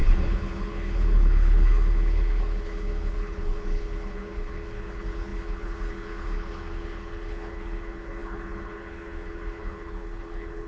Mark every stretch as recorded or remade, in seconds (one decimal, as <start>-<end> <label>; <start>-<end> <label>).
0.0-10.7 remade